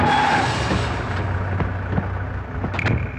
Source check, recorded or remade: recorded